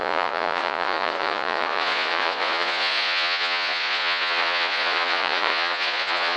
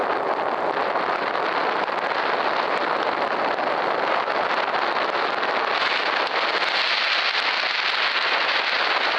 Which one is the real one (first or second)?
second